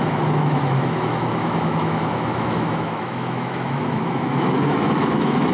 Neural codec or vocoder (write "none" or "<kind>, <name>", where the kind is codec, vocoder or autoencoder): autoencoder, DAC-VAE